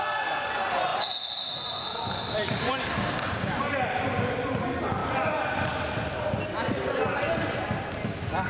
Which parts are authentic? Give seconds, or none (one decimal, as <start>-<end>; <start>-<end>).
0.0-0.9; 3.6-8.5